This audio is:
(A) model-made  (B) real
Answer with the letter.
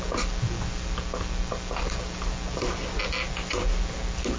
B